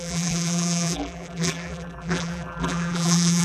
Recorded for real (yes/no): no